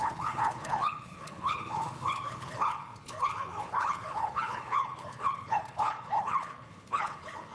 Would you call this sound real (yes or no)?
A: no